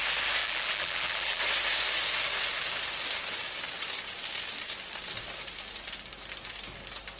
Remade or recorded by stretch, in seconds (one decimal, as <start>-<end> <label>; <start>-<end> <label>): 0.0-0.4 recorded; 0.4-1.4 remade; 1.4-7.2 recorded